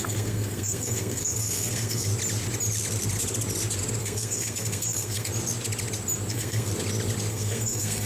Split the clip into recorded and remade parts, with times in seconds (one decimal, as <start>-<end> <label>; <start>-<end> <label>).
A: 0.0-2.1 remade; 2.1-4.0 recorded; 4.0-5.3 remade; 5.3-6.3 recorded; 6.3-6.7 remade; 6.7-7.3 recorded; 7.3-8.1 remade

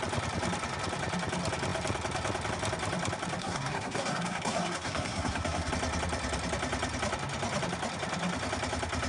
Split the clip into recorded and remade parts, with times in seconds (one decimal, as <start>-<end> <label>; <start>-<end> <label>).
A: 0.0-3.4 recorded; 3.4-5.7 remade; 5.7-9.1 recorded

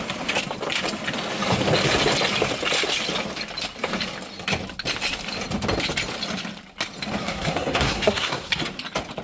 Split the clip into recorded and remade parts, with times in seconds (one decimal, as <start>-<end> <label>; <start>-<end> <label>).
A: 0.0-7.2 recorded; 7.2-8.6 remade; 8.6-9.2 recorded

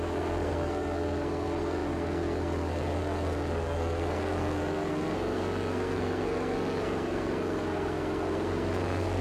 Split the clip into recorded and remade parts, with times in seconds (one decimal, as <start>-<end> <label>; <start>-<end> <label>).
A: 0.0-9.2 remade

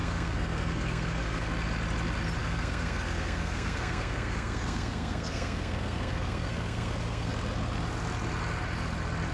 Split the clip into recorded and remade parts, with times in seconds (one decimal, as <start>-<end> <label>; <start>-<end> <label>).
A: 0.0-1.5 remade; 1.5-2.4 recorded; 2.4-7.3 remade; 7.3-9.3 recorded

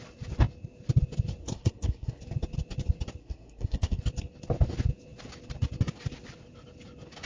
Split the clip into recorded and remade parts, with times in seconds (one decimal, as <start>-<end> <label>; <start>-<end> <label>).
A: 0.0-1.4 recorded; 1.4-2.2 remade; 2.2-3.2 recorded; 3.2-4.0 remade; 4.0-7.3 recorded

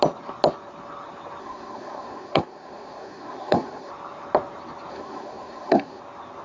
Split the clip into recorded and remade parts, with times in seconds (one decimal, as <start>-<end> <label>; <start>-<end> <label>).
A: 0.0-1.4 recorded; 1.4-3.9 remade; 3.9-4.9 recorded; 4.9-6.0 remade; 6.0-6.4 recorded